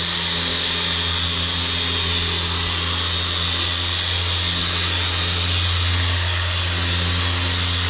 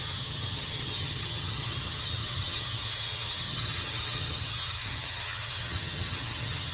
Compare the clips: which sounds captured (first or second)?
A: first